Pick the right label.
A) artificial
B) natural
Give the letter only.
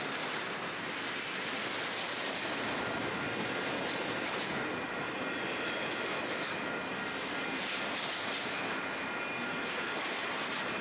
B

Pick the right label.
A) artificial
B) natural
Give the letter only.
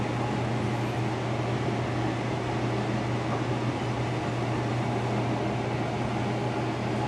B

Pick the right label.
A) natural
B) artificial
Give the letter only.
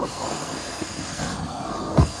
B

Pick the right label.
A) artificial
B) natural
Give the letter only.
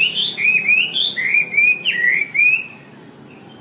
B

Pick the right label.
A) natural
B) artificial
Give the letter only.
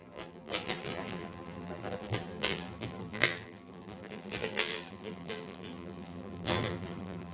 B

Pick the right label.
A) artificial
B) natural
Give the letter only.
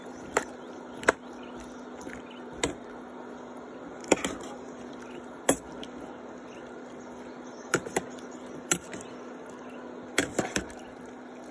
B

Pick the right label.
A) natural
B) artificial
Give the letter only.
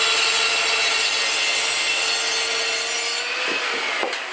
A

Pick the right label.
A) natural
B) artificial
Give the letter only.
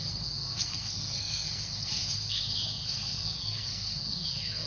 B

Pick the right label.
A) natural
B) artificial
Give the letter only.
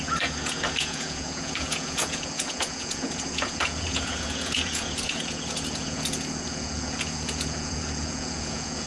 B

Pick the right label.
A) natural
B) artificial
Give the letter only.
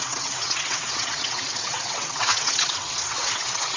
B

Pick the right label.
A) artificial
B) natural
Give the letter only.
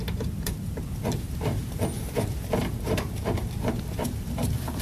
A